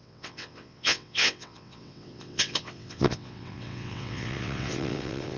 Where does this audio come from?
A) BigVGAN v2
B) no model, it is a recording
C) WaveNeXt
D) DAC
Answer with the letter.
C